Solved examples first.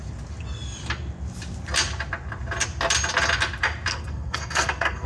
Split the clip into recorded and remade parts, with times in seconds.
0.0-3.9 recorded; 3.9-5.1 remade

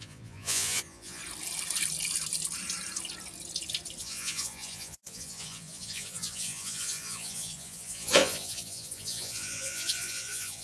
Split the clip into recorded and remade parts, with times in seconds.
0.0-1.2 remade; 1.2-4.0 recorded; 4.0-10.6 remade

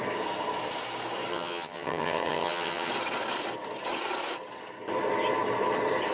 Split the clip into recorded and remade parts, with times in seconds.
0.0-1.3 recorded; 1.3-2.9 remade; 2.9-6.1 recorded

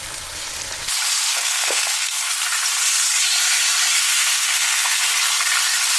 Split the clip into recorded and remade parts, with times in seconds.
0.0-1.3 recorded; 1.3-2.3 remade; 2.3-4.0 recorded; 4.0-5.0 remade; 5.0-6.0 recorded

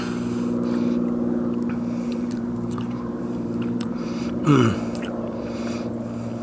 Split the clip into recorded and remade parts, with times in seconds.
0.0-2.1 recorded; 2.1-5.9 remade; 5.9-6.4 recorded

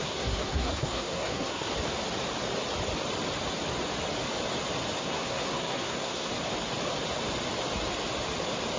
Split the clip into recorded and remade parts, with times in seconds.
0.0-1.7 remade; 1.7-5.0 recorded; 5.0-6.3 remade; 6.3-8.8 recorded